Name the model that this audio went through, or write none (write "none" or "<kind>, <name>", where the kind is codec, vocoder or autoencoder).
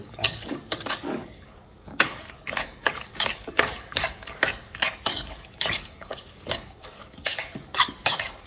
codec, DAC